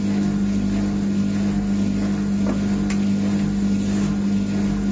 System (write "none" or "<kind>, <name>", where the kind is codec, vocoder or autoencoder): none